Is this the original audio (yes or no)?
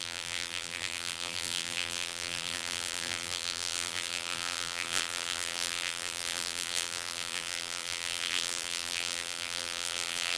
no